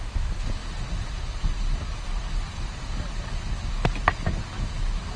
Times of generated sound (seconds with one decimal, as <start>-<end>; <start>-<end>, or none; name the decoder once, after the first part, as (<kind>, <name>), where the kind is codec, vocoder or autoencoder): none